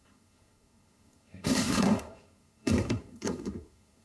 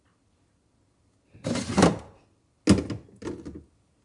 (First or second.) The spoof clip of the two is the first